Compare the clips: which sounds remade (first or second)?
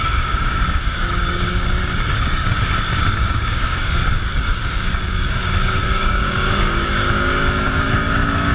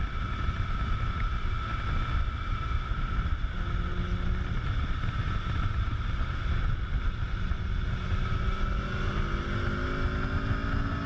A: first